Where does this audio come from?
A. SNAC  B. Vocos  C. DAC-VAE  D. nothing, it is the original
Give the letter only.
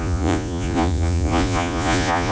B